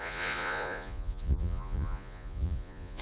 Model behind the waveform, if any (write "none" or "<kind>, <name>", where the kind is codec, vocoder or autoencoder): vocoder, Vocos